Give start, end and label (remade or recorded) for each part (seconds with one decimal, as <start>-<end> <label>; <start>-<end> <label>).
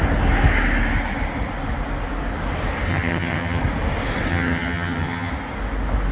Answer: 0.0-2.9 recorded; 2.9-3.6 remade; 3.6-4.3 recorded; 4.3-5.3 remade; 5.3-6.1 recorded